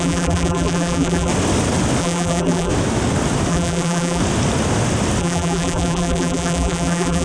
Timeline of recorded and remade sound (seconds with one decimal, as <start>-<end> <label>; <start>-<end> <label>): 0.0-1.3 remade; 1.3-2.0 recorded; 2.0-2.7 remade; 2.7-3.5 recorded; 3.5-4.2 remade; 4.2-5.2 recorded; 5.2-7.2 remade